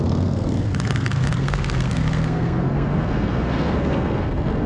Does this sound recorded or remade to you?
remade